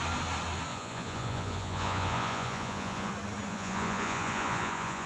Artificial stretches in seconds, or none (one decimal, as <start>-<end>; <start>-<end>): 0.7-3.1; 3.5-5.1